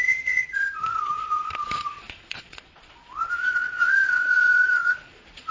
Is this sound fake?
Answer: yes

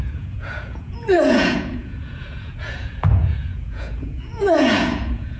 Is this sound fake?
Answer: yes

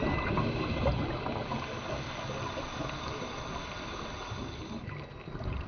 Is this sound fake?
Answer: no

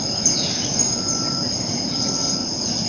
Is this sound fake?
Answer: no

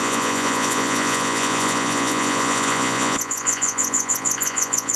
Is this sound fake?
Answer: yes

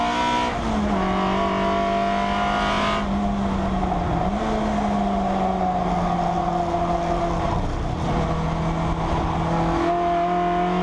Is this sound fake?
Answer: no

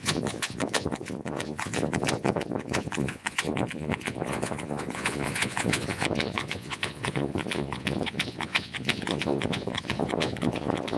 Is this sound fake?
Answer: yes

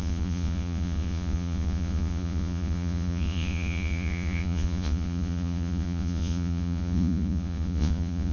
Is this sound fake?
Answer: yes